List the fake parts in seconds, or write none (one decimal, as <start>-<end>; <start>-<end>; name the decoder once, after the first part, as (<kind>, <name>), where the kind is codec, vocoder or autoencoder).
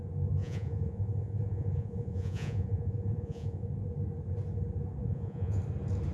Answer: 0.4-3.7 (vocoder, Vocos); 5.0-5.6